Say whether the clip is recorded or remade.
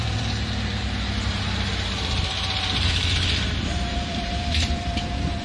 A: remade